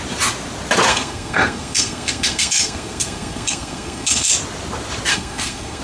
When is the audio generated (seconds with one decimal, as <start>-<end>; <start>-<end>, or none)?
0.9-4.3; 5.1-5.8